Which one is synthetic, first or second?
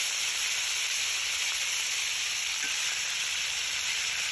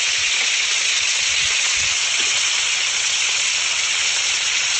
second